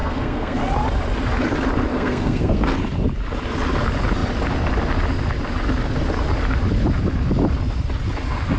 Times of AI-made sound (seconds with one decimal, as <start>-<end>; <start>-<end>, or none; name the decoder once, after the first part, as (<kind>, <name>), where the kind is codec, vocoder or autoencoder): 0.0-0.6 (codec, SNAC); 1.9-2.7